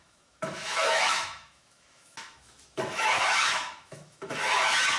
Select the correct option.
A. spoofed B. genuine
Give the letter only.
A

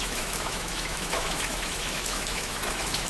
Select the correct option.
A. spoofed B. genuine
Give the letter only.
A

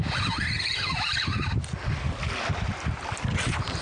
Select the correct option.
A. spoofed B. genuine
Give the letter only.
B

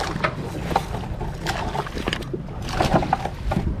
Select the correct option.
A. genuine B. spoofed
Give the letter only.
A